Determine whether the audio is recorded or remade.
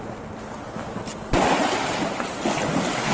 recorded